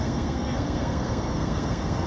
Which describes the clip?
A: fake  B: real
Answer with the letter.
A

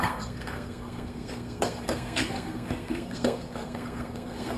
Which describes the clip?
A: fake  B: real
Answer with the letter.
A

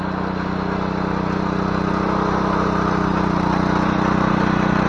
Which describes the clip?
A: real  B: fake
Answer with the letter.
A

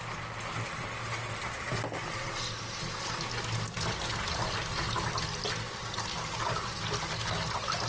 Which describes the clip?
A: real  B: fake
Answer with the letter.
A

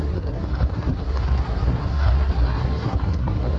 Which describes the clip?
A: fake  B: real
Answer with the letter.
A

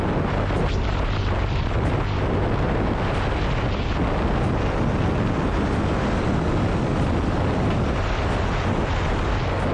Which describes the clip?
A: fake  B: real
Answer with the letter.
B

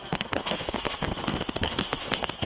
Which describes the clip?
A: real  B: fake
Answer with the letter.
B